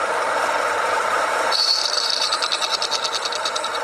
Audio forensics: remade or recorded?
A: remade